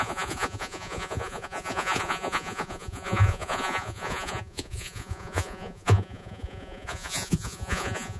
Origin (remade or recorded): remade